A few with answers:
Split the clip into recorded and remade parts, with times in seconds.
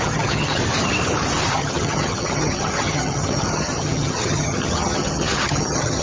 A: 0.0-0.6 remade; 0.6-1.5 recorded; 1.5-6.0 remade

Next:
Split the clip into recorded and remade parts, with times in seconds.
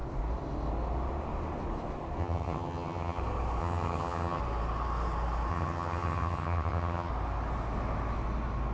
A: 0.0-2.2 recorded; 2.2-3.2 remade; 3.2-3.6 recorded; 3.6-4.4 remade; 4.4-5.5 recorded; 5.5-7.1 remade; 7.1-8.7 recorded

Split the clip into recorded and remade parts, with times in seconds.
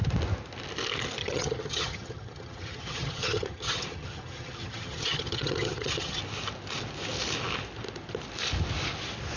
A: 0.0-1.2 recorded; 1.2-6.2 remade; 6.2-9.4 recorded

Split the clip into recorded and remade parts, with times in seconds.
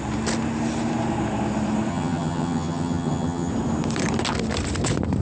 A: 0.0-1.9 recorded; 1.9-3.5 remade; 3.5-5.2 recorded